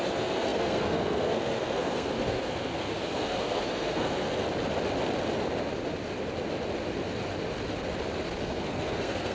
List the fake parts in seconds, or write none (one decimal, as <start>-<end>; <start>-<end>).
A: 0.0-4.4; 8.4-9.3